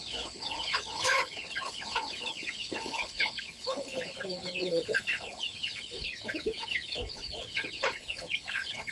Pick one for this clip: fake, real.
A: fake